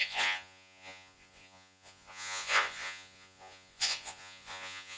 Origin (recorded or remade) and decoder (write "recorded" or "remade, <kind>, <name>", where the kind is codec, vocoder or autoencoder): remade, vocoder, Vocos